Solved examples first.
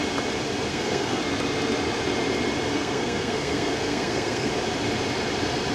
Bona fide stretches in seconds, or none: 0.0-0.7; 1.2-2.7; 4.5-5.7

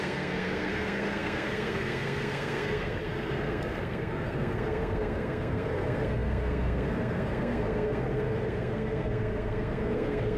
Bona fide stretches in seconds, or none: none

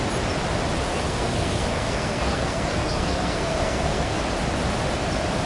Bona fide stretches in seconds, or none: 0.0-0.9; 4.2-5.5

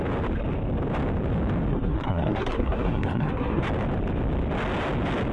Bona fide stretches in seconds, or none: 0.0-1.7; 3.6-5.3

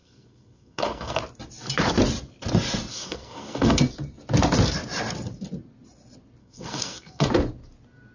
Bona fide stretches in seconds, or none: 1.2-2.9; 3.8-6.4; 7.3-8.1